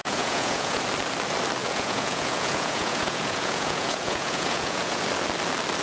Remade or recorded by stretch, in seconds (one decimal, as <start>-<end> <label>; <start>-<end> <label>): 0.0-0.8 remade; 0.8-1.6 recorded; 1.6-5.0 remade; 5.0-5.8 recorded